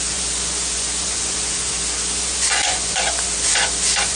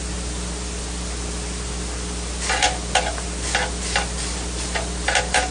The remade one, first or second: first